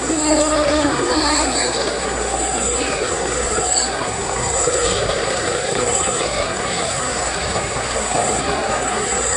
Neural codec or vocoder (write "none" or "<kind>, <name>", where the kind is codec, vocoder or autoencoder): codec, SNAC